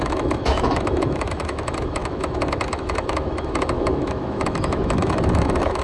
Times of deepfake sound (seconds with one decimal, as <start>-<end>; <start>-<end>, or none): 0.0-5.8